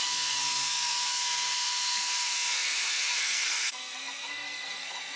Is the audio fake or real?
fake